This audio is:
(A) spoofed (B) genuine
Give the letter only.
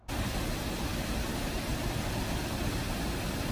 B